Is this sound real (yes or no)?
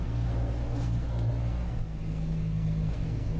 no